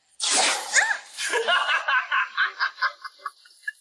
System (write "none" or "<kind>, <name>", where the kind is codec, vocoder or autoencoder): none